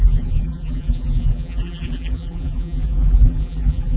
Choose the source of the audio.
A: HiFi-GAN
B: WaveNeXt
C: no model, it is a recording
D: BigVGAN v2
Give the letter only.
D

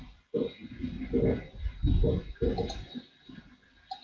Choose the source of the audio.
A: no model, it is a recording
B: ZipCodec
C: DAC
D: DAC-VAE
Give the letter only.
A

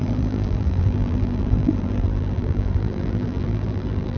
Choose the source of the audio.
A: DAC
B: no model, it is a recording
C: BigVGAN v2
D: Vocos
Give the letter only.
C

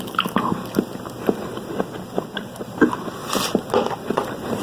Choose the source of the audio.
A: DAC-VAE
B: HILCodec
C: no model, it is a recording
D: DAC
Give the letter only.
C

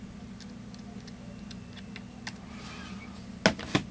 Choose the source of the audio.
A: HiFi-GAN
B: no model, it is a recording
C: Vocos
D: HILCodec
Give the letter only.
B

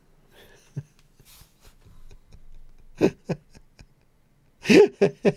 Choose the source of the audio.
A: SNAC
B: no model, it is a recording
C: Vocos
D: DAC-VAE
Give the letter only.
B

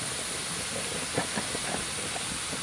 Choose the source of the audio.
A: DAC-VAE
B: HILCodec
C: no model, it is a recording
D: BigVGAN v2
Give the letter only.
C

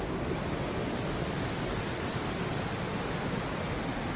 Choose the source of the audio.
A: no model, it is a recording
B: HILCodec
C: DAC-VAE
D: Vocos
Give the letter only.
A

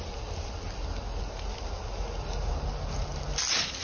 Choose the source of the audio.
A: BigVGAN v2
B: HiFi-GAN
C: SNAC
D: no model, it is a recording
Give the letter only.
D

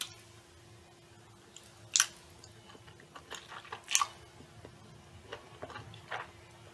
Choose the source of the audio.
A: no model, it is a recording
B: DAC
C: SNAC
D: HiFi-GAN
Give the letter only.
A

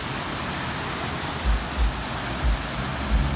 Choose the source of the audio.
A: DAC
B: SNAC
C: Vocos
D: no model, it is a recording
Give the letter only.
D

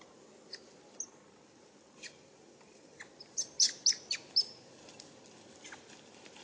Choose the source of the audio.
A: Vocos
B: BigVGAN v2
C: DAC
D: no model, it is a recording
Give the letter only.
D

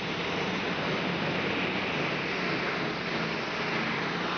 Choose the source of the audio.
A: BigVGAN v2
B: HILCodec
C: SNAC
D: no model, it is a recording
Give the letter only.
D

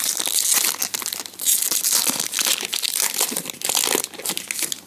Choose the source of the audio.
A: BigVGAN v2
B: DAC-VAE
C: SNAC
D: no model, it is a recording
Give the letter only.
D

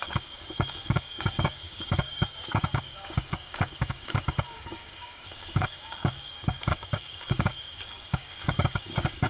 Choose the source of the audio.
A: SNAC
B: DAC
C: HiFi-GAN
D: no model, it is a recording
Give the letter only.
B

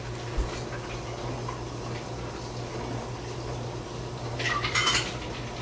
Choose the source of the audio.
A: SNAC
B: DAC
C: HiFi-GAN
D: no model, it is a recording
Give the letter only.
D